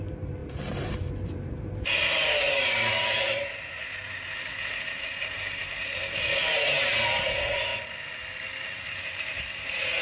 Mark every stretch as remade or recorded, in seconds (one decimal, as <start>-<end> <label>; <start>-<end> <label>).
0.0-7.7 remade; 7.7-8.7 recorded; 8.7-10.0 remade